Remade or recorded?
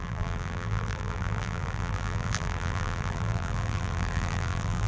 remade